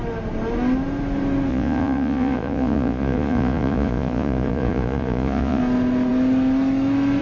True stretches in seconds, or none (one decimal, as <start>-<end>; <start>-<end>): 0.0-1.5; 5.6-7.2